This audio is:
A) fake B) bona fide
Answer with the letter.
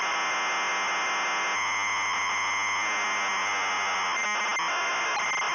B